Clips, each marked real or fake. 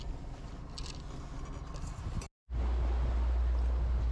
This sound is real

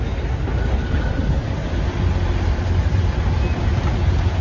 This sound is real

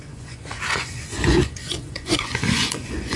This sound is fake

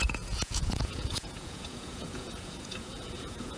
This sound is fake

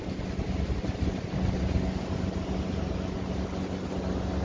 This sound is real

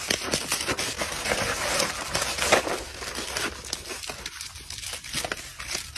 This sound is real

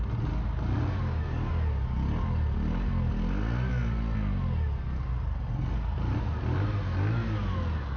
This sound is real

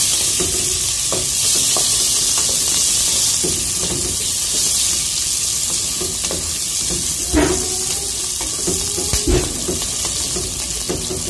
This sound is real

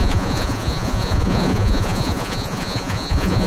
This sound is fake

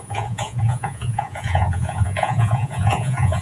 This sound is fake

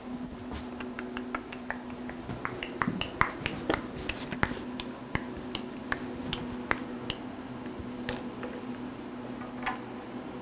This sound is real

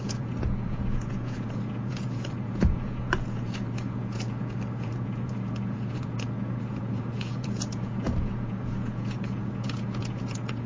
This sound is fake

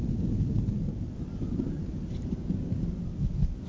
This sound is real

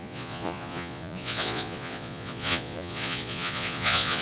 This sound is fake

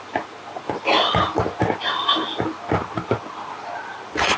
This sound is real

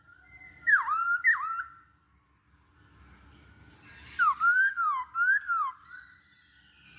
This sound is real